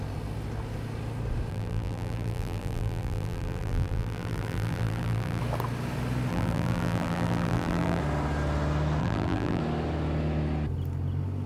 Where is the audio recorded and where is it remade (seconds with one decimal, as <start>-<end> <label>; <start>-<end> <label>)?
0.0-1.5 recorded; 1.5-5.4 remade; 5.4-6.3 recorded; 6.3-8.0 remade; 8.0-9.0 recorded; 9.0-9.6 remade; 9.6-11.5 recorded